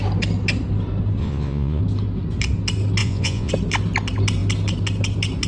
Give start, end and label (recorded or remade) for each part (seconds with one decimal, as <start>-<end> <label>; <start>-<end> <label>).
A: 0.0-1.2 recorded; 1.2-1.8 remade; 1.8-3.0 recorded; 3.0-3.5 remade; 3.5-5.5 recorded